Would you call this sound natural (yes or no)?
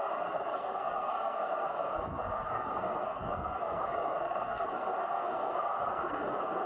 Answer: no